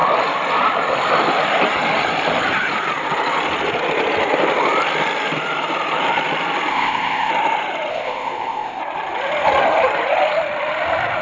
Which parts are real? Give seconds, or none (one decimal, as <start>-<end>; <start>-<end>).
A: 0.0-6.7; 7.3-7.9; 8.8-11.2